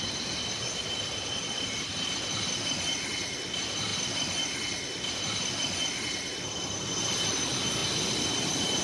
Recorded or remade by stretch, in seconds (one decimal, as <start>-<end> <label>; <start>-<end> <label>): 0.0-8.8 recorded